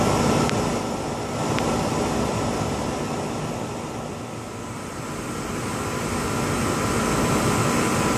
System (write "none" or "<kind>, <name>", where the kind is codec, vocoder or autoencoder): none